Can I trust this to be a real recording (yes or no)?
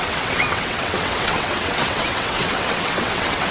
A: no